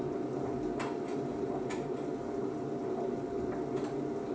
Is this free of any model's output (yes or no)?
yes